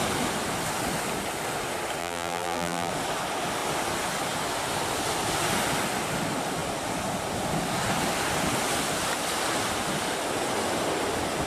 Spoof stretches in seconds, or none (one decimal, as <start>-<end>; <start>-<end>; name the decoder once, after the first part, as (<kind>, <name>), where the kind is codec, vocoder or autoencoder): 2.0-2.9 (vocoder, BigVGAN v2)